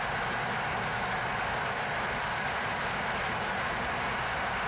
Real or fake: real